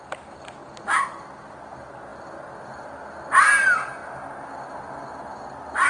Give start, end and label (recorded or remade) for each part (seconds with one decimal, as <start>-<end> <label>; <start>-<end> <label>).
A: 0.0-5.9 recorded